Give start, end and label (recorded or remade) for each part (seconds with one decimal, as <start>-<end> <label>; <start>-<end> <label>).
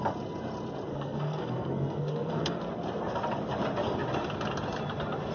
0.0-0.9 recorded; 0.9-2.6 remade; 2.6-5.3 recorded